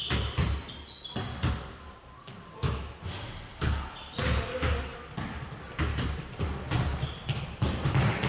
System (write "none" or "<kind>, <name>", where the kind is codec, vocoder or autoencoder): none